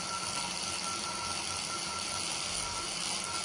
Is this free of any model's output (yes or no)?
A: yes